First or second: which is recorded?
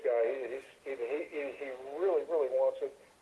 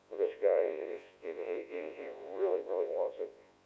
first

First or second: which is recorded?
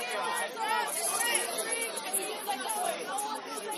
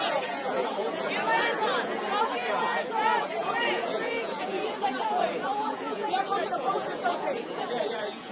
first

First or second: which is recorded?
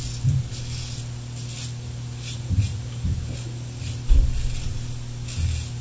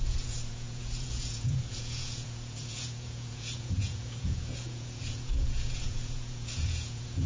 first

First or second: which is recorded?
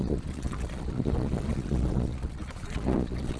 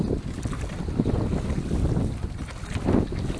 second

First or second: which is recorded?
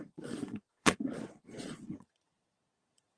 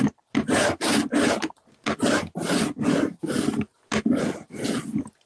second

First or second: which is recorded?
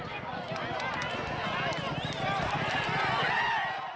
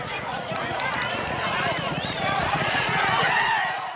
first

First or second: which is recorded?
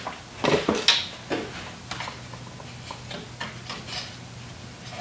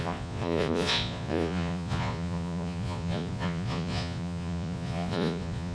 first